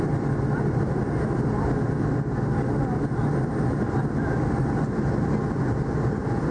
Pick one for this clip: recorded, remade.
recorded